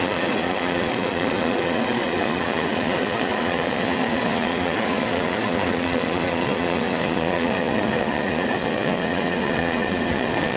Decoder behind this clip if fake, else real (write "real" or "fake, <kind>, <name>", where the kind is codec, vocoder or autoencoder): fake, vocoder, Vocos